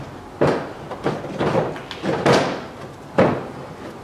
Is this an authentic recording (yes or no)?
yes